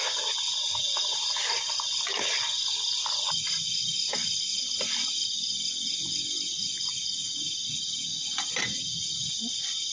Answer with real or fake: real